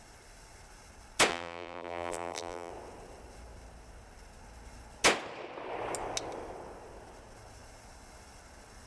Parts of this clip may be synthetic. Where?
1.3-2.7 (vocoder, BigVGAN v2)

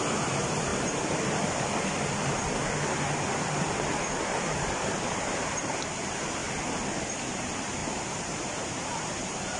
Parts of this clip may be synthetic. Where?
0.0-0.7 (vocoder, BigVGAN v2); 5.0-6.4; 7.2-9.6

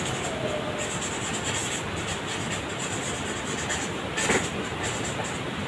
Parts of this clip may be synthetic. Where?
none